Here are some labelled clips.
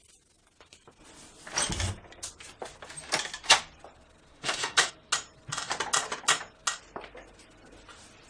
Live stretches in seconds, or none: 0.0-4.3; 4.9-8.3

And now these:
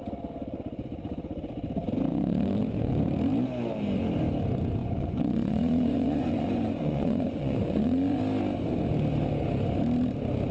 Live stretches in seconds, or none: 0.0-2.1; 3.0-4.8; 8.2-10.5

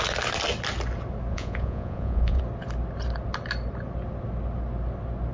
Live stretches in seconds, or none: 0.0-1.3; 2.4-5.3

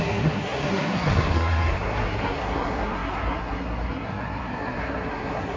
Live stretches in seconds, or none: none

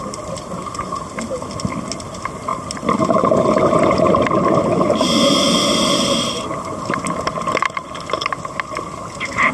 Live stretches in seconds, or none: 0.0-9.5

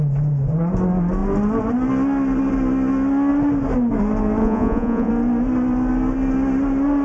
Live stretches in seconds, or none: 0.0-4.4; 5.1-7.0